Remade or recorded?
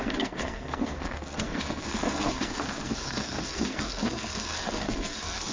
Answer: remade